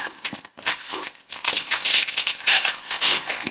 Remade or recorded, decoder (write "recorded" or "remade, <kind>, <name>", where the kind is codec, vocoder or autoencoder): remade, codec, ZipCodec